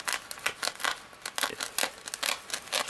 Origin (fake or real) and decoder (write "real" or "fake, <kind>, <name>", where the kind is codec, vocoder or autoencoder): real